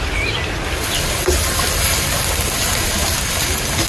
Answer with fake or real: real